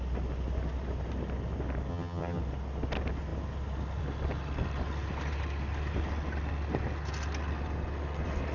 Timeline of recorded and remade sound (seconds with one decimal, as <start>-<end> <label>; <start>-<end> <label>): 0.0-1.9 recorded; 1.9-2.4 remade; 2.4-8.5 recorded